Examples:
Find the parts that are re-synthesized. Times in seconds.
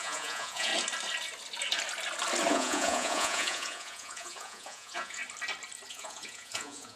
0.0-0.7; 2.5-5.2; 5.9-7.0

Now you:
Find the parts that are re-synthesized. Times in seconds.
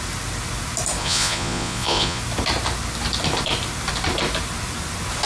1.0-2.2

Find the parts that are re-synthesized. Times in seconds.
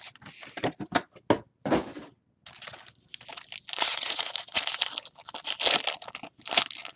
3.9-4.6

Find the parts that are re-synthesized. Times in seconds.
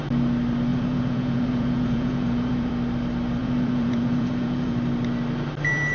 0.7-2.7; 3.4-4.7